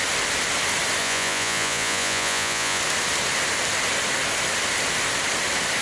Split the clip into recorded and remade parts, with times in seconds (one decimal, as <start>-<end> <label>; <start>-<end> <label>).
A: 0.0-1.0 recorded; 1.0-2.8 remade; 2.8-5.8 recorded

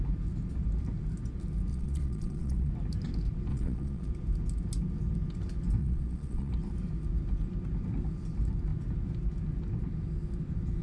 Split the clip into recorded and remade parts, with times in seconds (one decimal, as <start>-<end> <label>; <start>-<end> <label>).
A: 0.0-1.7 recorded; 1.7-2.7 remade; 2.7-3.5 recorded; 3.5-4.1 remade; 4.1-5.8 recorded; 5.8-6.5 remade; 6.5-10.8 recorded

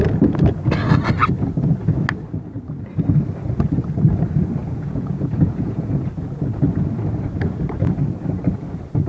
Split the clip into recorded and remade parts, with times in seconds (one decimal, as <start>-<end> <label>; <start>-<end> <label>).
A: 0.0-4.6 recorded; 4.6-6.1 remade; 6.1-9.1 recorded

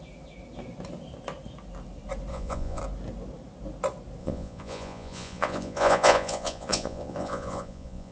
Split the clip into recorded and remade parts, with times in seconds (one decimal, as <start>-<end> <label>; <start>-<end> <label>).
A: 0.0-2.3 recorded; 2.3-2.8 remade; 2.8-4.2 recorded; 4.2-8.1 remade